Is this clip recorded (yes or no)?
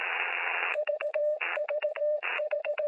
no